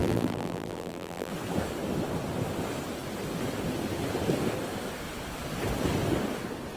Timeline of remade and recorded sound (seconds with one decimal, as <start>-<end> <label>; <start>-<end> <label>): 0.0-1.3 remade; 1.3-6.8 recorded